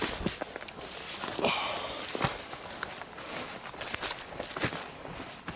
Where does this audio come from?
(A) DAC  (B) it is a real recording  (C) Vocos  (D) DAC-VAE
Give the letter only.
B